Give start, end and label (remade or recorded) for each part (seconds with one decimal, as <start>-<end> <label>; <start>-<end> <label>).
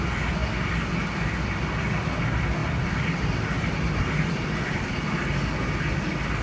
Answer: 0.0-2.6 recorded; 2.6-4.6 remade; 4.6-6.4 recorded